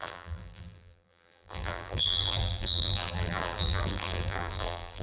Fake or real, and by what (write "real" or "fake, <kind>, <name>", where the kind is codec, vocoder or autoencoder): fake, vocoder, BigVGAN v2